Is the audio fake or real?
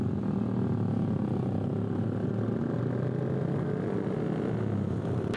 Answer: real